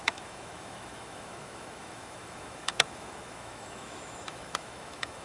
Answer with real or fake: fake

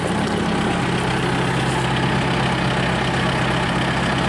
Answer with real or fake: real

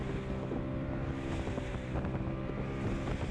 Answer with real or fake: real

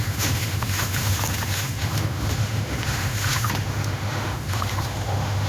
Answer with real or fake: fake